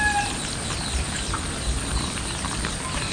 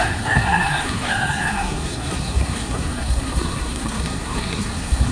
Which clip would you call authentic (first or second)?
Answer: first